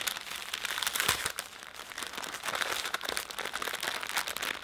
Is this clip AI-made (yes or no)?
no